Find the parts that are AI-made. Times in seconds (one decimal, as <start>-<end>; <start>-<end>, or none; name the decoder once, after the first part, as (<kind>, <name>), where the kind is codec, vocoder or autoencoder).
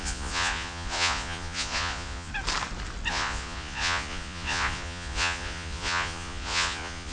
0.0-2.3 (vocoder, Vocos); 3.1-7.1